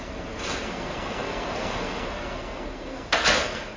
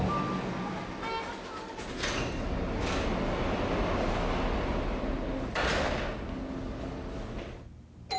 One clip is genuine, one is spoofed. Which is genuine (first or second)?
second